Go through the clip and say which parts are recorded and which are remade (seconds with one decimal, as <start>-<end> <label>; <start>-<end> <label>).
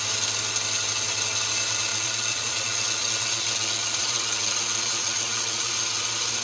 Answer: 0.0-1.9 recorded; 1.9-5.7 remade; 5.7-6.4 recorded